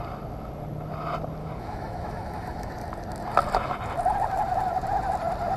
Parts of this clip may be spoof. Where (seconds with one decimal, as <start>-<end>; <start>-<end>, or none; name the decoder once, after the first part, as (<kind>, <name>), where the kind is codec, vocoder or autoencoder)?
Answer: 1.4-2.7 (autoencoder, DAC-VAE)

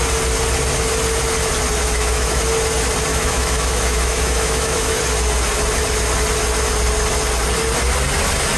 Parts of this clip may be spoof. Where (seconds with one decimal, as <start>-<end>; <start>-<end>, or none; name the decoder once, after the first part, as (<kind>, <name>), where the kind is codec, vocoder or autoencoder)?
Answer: 1.8-2.4 (autoencoder, DAC-VAE); 3.1-5.0

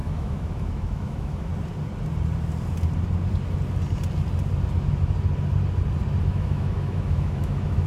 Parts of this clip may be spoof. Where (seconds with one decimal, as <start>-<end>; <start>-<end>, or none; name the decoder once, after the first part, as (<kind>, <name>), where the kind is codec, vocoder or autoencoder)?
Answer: 0.0-1.5 (autoencoder, DAC-VAE); 6.2-7.9